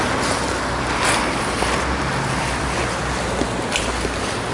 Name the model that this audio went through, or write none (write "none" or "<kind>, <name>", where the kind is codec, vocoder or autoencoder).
none